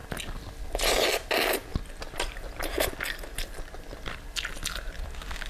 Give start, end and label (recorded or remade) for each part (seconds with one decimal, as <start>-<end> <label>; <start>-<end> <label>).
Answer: 0.0-5.5 recorded